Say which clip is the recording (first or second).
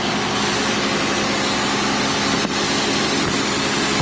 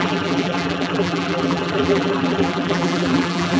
first